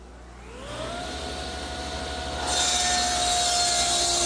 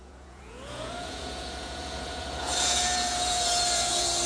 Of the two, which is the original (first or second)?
first